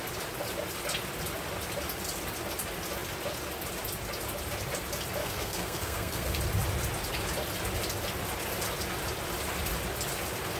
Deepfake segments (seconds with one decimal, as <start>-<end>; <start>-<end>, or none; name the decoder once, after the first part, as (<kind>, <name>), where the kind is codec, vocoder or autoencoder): 5.2-6.4 (codec, SNAC)